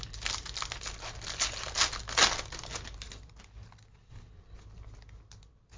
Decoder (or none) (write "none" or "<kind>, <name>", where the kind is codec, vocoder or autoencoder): none